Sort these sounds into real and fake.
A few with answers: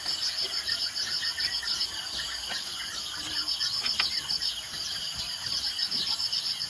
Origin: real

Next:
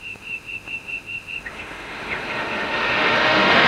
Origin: fake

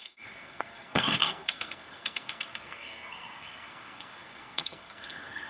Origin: fake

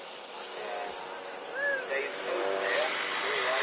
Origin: real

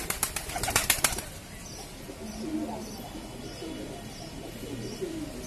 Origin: real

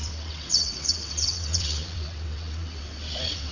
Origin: fake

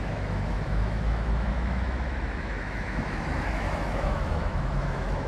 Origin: fake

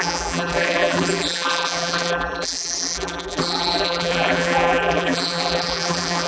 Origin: fake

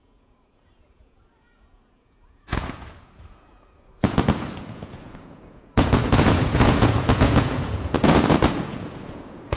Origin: fake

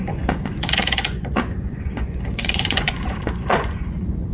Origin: fake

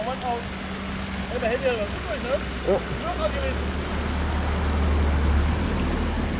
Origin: real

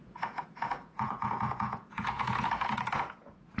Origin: fake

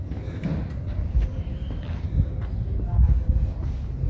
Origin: real